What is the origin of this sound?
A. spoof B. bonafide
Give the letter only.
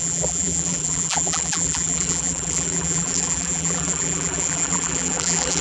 A